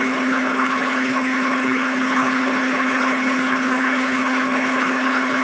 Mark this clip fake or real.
fake